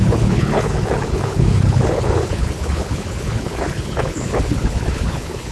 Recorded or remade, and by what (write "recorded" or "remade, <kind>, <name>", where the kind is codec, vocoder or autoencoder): remade, codec, HILCodec